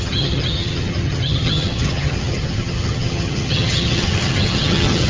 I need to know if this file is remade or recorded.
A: remade